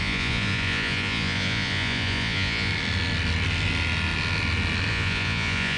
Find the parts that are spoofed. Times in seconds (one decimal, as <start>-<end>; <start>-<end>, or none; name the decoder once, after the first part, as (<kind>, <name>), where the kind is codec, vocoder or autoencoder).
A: 0.0-2.7 (vocoder, Vocos); 4.9-5.8